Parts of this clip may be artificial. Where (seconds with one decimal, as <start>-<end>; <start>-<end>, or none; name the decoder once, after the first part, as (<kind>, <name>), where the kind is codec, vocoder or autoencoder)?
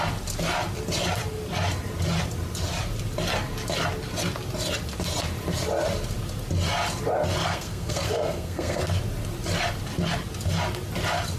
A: 7.4-8.8 (codec, SNAC)